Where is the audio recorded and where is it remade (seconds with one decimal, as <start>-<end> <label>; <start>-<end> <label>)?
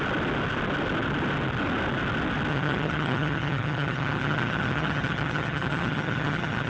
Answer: 0.0-2.5 recorded; 2.5-6.7 remade